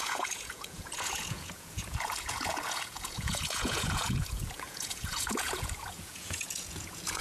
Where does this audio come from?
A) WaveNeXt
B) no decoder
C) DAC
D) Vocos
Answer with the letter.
D